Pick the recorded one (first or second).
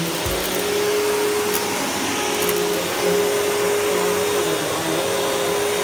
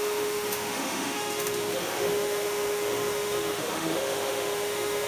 first